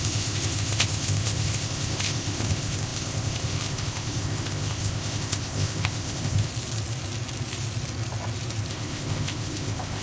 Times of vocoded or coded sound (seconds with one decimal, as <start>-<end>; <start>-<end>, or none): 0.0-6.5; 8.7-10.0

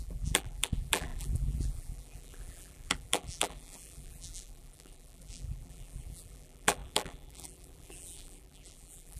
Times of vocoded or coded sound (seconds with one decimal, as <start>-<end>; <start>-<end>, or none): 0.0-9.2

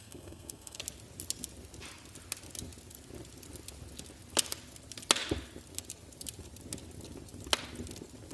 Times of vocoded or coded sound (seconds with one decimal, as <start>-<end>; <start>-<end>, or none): 0.0-0.8

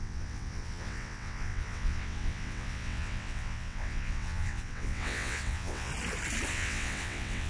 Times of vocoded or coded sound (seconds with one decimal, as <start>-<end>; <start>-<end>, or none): 0.0-5.9; 6.5-7.5